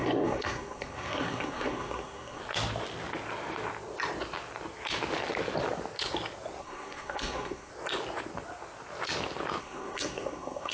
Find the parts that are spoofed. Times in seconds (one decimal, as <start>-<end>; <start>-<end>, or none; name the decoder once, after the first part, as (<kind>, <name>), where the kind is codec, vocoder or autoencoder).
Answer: 0.0-2.4 (codec, SNAC); 6.6-7.7; 9.6-10.7